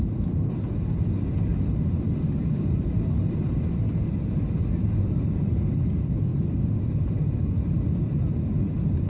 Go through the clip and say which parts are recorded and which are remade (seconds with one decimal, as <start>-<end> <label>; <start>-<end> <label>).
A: 0.0-1.5 remade; 1.5-2.4 recorded; 2.4-9.1 remade